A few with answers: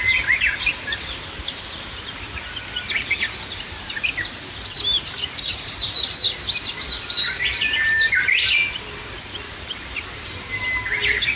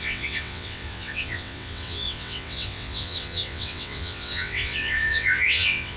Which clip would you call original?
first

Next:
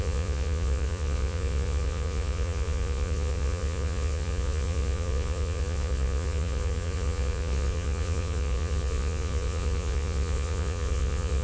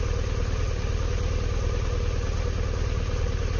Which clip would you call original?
second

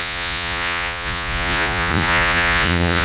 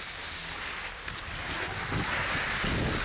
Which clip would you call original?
second